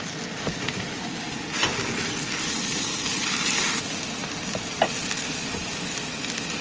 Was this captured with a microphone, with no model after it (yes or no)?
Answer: yes